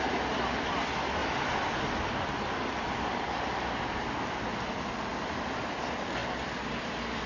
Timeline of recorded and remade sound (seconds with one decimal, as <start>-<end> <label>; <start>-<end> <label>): 0.0-1.2 remade; 1.2-2.7 recorded; 2.7-6.2 remade; 6.2-6.8 recorded; 6.8-7.3 remade